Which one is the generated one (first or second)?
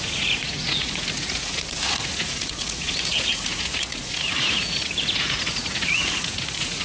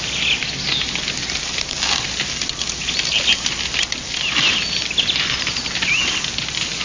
first